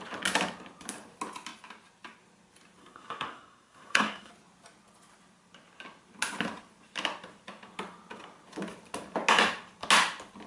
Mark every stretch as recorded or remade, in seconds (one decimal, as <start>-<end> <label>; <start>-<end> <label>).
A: 0.0-2.8 recorded; 2.8-4.3 remade; 4.3-10.5 recorded